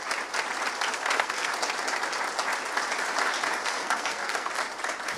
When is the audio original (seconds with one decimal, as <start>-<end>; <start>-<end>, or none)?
0.0-0.9; 1.5-3.6; 4.5-5.2